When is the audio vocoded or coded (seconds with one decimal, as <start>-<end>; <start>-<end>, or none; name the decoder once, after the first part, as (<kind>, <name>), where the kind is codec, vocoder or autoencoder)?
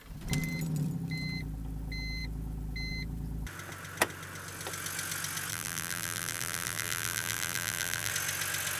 5.5-8.1 (vocoder, BigVGAN v2)